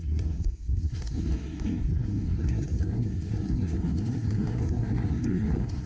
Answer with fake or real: fake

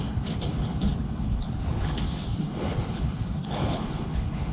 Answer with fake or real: fake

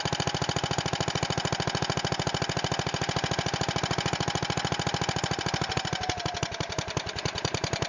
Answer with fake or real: fake